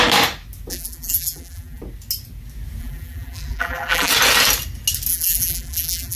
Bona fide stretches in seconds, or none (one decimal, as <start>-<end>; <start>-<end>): 0.0-0.7; 1.8-2.8; 4.1-5.1